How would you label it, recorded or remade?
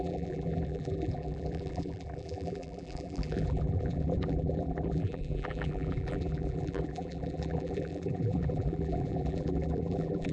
remade